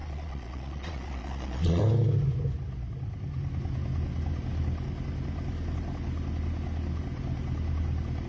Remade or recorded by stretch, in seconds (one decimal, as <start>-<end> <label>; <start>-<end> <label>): 0.0-1.8 remade; 1.8-8.3 recorded